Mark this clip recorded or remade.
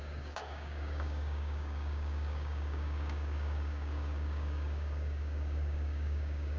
remade